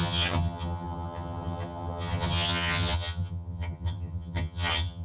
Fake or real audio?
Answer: fake